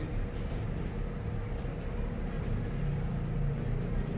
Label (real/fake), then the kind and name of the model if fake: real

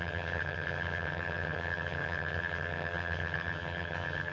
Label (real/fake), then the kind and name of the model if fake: fake, vocoder, HiFi-GAN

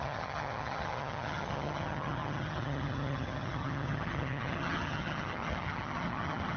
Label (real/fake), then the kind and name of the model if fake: fake, vocoder, HiFi-GAN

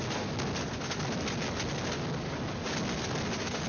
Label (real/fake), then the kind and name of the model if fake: real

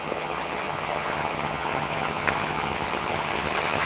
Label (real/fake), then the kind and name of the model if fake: fake, vocoder, HiFi-GAN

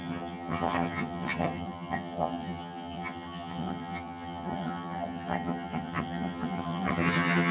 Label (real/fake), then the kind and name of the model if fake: fake, vocoder, HiFi-GAN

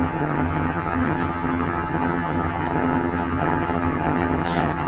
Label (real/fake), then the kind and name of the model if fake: fake, vocoder, HiFi-GAN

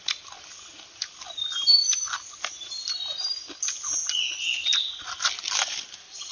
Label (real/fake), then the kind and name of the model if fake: real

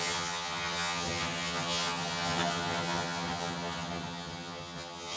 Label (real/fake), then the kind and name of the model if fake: fake, vocoder, HiFi-GAN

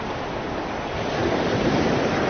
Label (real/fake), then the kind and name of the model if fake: real